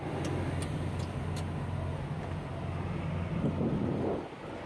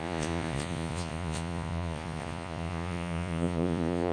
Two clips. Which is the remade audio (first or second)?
second